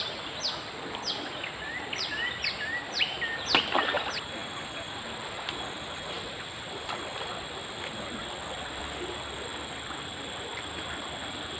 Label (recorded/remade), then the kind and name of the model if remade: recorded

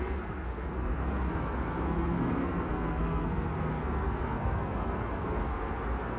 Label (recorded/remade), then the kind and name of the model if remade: remade, codec, SNAC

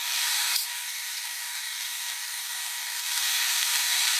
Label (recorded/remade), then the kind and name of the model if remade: remade, codec, DAC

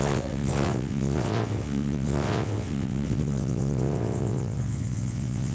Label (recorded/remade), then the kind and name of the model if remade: remade, vocoder, WaveNeXt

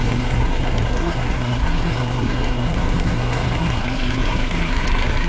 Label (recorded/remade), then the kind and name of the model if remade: remade, codec, SNAC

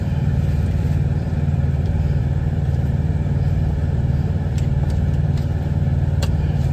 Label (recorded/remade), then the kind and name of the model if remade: remade, vocoder, BigVGAN v2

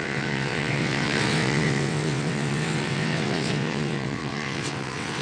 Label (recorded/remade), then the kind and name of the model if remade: remade, vocoder, WaveNeXt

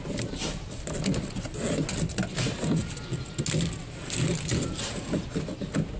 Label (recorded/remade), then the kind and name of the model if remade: recorded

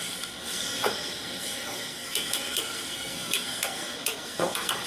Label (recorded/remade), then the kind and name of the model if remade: remade, codec, SNAC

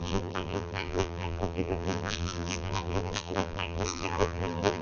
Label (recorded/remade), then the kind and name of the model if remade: remade, vocoder, BigVGAN v2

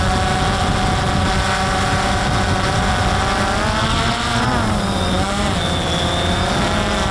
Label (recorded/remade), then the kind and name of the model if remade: recorded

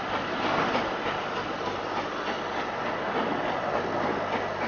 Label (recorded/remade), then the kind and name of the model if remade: recorded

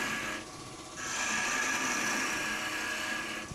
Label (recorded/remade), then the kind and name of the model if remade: recorded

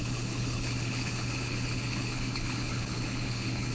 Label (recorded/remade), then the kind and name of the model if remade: remade, codec, HILCodec